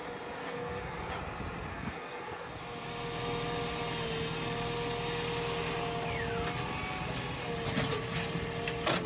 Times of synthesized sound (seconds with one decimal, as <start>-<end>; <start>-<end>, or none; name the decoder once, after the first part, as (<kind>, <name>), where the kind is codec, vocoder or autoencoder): 0.4-1.1 (codec, SNAC); 1.7-2.6